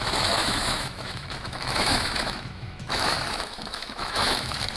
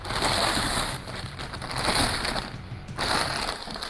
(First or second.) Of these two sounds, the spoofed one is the first